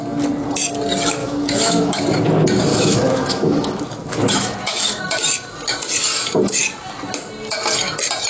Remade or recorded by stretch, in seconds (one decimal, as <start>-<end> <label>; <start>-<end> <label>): 0.0-1.2 recorded; 1.2-2.0 remade; 2.0-2.7 recorded; 2.7-5.0 remade; 5.0-8.3 recorded